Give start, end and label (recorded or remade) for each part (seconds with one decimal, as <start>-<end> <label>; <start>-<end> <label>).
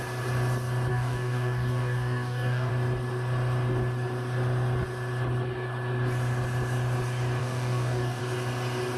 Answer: 0.0-0.9 recorded; 0.9-2.7 remade; 2.7-7.4 recorded; 7.4-8.2 remade; 8.2-9.0 recorded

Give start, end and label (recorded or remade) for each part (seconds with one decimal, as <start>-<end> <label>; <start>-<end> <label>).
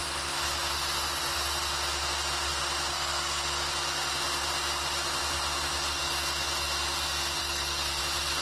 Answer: 0.0-2.9 recorded; 2.9-3.7 remade; 3.7-7.4 recorded; 7.4-8.0 remade; 8.0-8.4 recorded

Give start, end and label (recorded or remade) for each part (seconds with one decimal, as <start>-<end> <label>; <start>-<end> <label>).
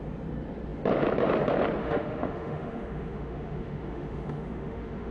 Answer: 0.0-1.8 recorded; 1.8-5.1 remade